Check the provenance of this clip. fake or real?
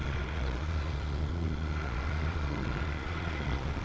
fake